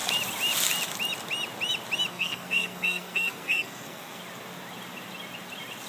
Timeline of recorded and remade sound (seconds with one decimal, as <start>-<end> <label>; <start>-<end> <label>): 0.0-2.1 recorded; 2.1-4.2 remade; 4.2-5.9 recorded